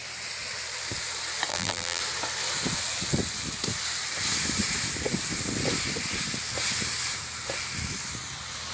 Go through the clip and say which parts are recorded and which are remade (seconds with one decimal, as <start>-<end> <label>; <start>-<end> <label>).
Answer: 0.0-1.5 recorded; 1.5-2.0 remade; 2.0-8.7 recorded